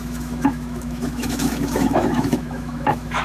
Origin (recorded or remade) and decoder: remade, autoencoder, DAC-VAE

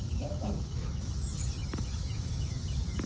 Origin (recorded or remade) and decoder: remade, autoencoder, DAC-VAE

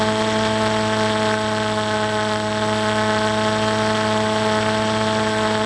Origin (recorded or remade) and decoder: recorded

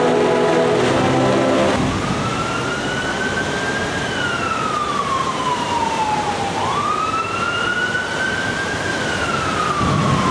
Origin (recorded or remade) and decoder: recorded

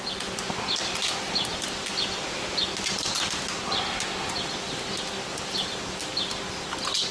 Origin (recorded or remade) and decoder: recorded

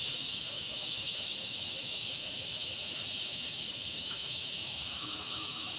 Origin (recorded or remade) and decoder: remade, autoencoder, DAC-VAE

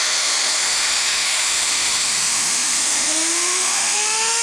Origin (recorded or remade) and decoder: remade, autoencoder, DAC-VAE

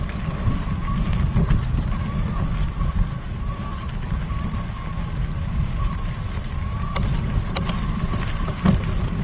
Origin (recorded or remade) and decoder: recorded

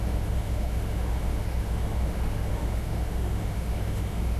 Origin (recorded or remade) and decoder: remade, autoencoder, DAC-VAE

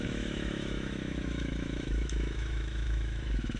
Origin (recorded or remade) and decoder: remade, autoencoder, DAC-VAE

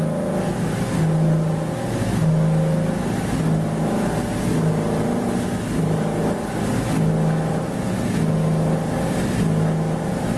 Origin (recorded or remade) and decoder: recorded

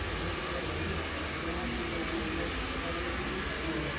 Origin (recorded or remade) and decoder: recorded